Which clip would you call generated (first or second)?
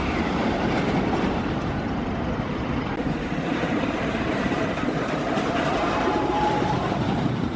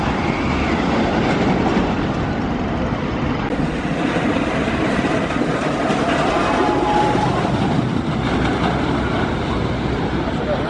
first